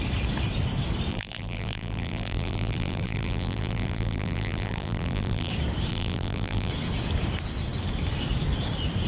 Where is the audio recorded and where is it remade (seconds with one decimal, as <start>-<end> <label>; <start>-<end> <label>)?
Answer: 0.0-1.1 recorded; 1.1-5.5 remade; 5.5-5.9 recorded; 5.9-6.7 remade; 6.7-9.1 recorded

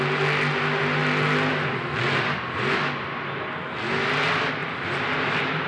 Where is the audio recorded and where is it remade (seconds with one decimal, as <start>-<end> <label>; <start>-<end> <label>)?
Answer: 0.0-5.7 recorded